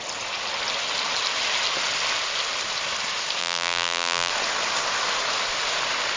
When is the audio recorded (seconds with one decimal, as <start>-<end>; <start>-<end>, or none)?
0.0-3.4; 4.3-6.2